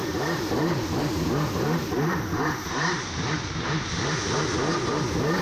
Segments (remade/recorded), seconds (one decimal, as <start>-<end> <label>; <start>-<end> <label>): 0.0-1.1 remade; 1.1-1.8 recorded; 1.8-5.0 remade; 5.0-5.4 recorded